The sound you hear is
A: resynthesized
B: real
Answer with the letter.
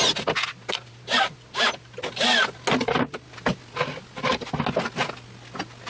B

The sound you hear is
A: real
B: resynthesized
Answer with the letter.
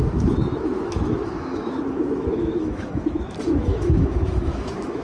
B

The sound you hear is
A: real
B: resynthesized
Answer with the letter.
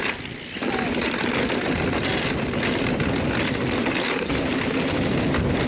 A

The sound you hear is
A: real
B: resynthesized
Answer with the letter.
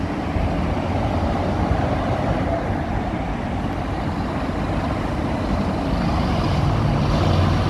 A